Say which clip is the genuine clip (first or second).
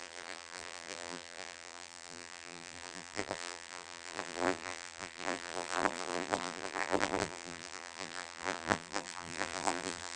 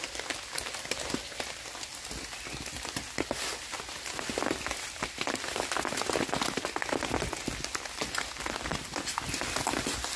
second